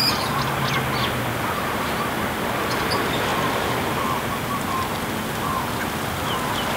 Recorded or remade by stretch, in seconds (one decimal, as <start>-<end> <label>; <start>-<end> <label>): 0.0-2.8 recorded; 2.8-3.3 remade; 3.3-5.5 recorded; 5.5-6.8 remade